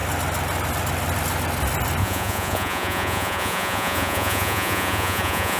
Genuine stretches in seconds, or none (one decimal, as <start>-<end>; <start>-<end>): 0.0-2.0